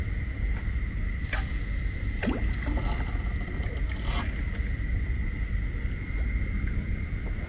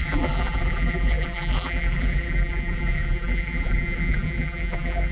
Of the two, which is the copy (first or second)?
second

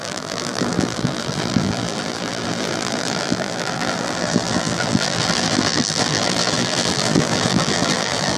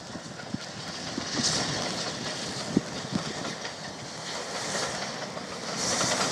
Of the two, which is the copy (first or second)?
first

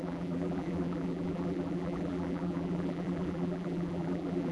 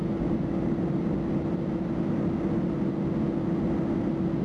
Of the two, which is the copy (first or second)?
first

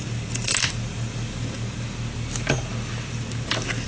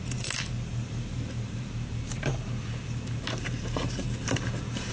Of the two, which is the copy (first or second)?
second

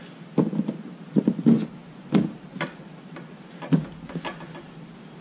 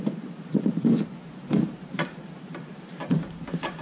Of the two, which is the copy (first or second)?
second